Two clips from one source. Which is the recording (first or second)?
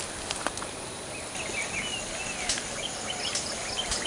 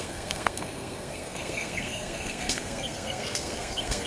first